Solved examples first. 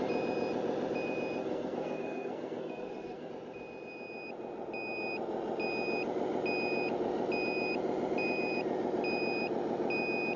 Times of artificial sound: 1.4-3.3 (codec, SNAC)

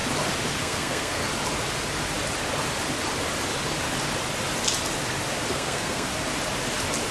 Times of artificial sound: 0.6-1.2 (codec, SNAC); 5.5-6.1

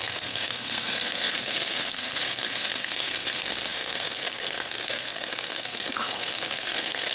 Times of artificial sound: 0.0-7.1 (codec, SNAC)

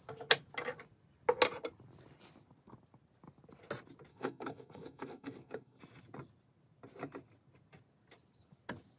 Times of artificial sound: 4.1-5.8 (codec, SNAC)

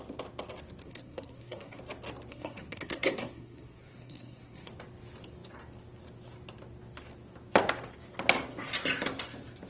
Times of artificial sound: 0.8-1.8 (codec, SNAC); 2.3-4.7